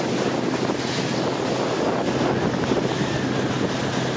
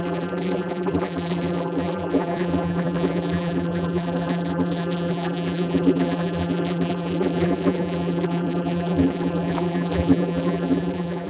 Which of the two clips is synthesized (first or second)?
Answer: second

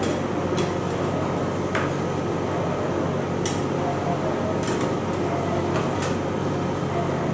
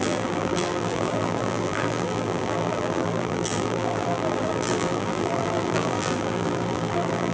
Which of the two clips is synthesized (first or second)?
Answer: second